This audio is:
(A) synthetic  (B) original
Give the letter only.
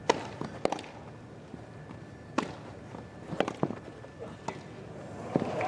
B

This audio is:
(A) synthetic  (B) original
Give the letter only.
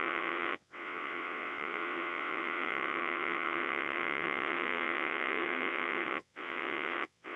A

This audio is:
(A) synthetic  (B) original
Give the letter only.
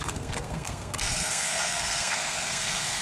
A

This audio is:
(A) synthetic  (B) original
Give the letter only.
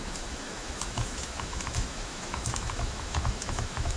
A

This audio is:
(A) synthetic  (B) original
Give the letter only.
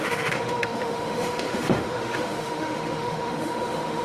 A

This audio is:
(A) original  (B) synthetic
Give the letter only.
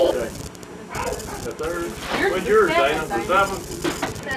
A